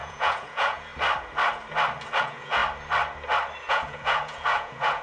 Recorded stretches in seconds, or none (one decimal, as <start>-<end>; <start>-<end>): 0.9-2.2; 2.6-3.7